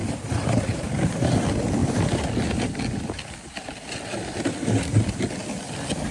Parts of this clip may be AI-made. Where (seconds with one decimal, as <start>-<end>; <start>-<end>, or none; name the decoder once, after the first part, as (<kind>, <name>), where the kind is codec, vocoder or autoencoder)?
none